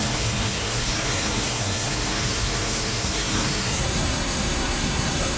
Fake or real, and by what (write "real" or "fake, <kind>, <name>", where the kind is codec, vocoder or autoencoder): fake, codec, SNAC